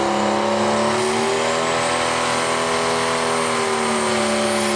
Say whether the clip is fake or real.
real